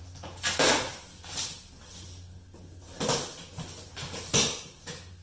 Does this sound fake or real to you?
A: real